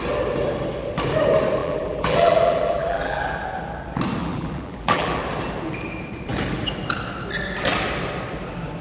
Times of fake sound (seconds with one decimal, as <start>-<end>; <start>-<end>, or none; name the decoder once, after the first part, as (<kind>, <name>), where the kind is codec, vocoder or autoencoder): 1.6-3.2 (vocoder, BigVGAN v2); 4.2-5.2

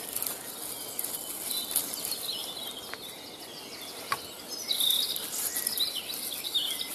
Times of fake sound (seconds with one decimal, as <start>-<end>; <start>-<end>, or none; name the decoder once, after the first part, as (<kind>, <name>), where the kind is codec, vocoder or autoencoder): none

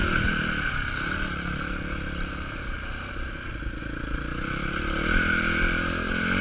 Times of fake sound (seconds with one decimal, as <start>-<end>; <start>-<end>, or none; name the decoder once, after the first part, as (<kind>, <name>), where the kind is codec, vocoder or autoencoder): none